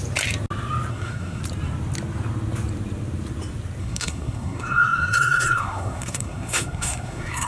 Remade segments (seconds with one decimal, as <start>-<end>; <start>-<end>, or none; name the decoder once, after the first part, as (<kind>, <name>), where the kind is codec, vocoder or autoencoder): 0.9-1.4 (codec, SNAC); 3.8-7.5